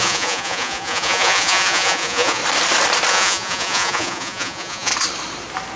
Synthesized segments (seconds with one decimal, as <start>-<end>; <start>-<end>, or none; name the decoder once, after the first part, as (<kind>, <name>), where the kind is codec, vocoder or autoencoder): 0.0-2.4 (vocoder, Vocos); 3.1-4.9

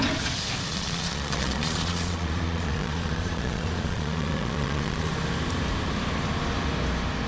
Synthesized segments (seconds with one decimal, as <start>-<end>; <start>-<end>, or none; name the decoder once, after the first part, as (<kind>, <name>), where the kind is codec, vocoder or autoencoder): 0.7-5.1 (vocoder, Vocos)

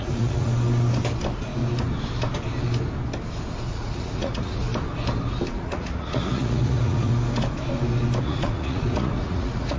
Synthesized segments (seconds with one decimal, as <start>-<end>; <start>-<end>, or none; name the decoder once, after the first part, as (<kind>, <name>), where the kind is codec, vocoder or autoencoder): 0.0-0.5 (vocoder, Vocos); 3.7-4.7; 5.5-7.1; 8.2-9.8